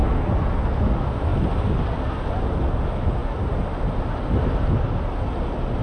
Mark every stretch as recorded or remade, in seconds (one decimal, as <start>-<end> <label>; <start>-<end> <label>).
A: 0.0-5.8 recorded